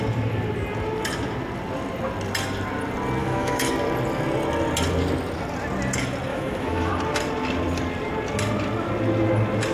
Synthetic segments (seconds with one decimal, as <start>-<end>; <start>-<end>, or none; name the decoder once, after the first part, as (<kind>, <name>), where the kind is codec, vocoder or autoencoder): 3.2-3.7 (autoencoder, DAC-VAE); 6.3-6.9